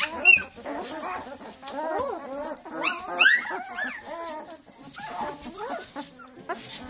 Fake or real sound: real